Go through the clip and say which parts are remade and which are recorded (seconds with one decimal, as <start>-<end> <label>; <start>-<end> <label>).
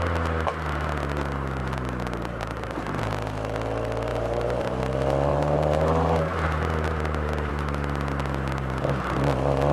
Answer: 0.0-1.6 recorded; 1.6-3.0 remade; 3.0-4.1 recorded; 4.1-4.8 remade; 4.8-5.3 recorded; 5.3-7.5 remade; 7.5-9.7 recorded